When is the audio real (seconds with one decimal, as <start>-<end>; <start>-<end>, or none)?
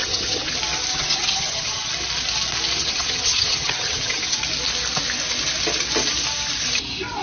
0.5-0.9; 1.9-2.8; 4.4-7.2